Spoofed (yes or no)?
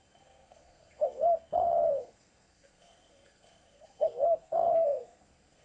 yes